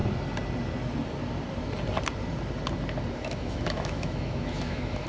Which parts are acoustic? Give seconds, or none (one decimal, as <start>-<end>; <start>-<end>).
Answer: 0.0-3.1